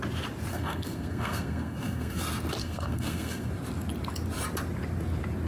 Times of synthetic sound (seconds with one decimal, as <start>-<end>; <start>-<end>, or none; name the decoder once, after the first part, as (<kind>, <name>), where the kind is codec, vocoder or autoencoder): 0.5-2.2 (codec, SNAC); 2.6-3.5